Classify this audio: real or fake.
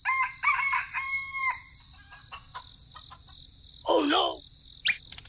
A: real